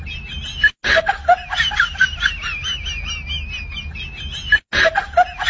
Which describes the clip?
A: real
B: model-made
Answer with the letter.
A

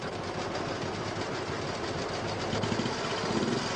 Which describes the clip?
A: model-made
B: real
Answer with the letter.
B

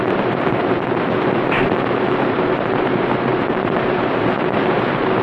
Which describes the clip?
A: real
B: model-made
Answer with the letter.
B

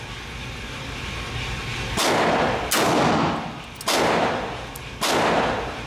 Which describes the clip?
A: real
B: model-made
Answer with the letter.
A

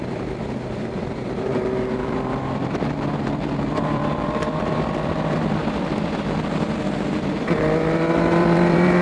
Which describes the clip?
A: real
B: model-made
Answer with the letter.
B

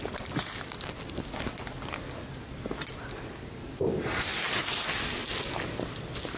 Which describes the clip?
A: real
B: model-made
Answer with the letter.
A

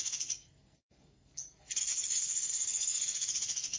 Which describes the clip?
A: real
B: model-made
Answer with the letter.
B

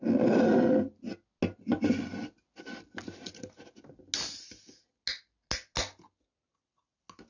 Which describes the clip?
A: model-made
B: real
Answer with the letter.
B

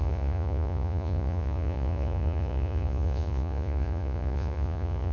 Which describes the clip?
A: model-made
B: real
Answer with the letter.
A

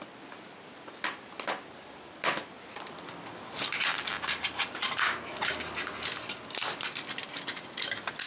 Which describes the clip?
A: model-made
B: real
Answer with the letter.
B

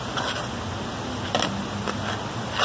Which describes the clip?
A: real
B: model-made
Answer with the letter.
A